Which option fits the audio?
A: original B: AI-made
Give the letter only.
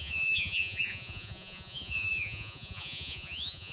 B